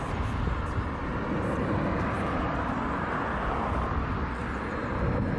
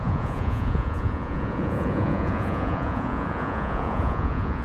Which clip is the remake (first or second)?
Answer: second